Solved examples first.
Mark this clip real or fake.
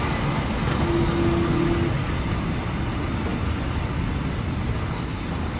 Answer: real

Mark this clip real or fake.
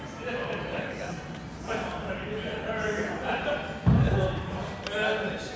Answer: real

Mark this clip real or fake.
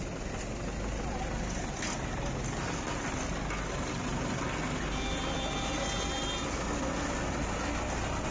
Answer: real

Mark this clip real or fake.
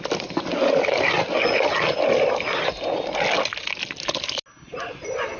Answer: real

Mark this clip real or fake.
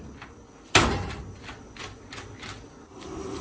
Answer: real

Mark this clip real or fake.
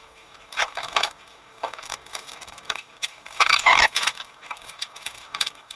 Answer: fake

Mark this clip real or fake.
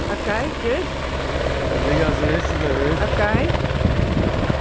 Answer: real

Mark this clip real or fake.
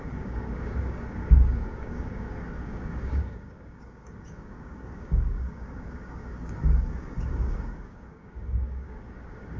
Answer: fake